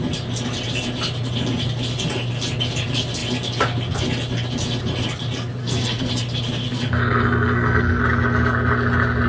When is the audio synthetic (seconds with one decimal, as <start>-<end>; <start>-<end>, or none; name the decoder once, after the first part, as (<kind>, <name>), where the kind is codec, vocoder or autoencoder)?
5.6-6.1 (codec, SNAC); 6.7-8.0